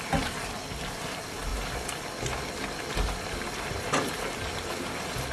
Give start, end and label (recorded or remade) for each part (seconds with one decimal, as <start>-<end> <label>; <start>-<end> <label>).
0.0-5.3 recorded